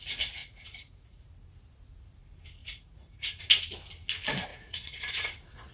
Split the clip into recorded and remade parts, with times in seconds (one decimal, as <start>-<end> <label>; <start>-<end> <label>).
0.0-0.4 recorded; 0.4-1.2 remade; 1.2-2.6 recorded; 2.6-3.4 remade; 3.4-4.5 recorded; 4.5-5.7 remade